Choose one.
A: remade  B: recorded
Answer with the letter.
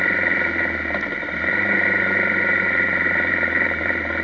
B